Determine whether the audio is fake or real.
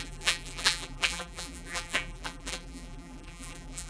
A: fake